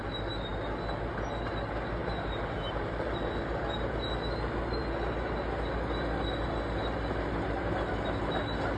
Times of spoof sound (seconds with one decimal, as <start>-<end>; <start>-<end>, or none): 2.0-3.5

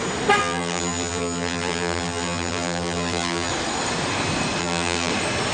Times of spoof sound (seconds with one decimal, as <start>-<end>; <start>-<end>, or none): 0.4-3.5; 4.6-5.1